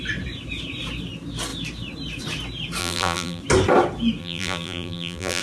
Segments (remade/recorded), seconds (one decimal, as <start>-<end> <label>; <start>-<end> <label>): 0.0-2.8 recorded; 2.8-3.4 remade; 3.4-4.2 recorded; 4.2-5.4 remade